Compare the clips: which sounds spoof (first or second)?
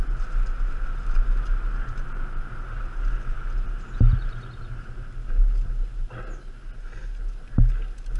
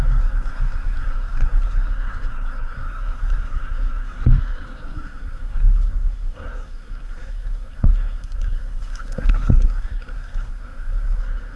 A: second